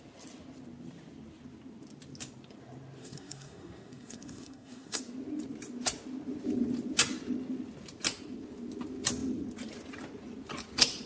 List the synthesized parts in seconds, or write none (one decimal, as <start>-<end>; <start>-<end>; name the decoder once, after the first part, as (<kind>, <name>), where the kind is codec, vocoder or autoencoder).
3.0-5.0 (codec, SNAC)